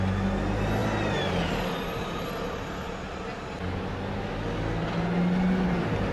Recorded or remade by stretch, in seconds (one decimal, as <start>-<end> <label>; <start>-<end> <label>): 0.0-6.1 recorded